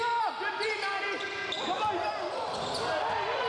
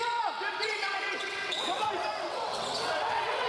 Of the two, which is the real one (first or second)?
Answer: first